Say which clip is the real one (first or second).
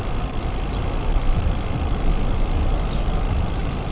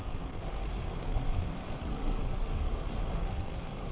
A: first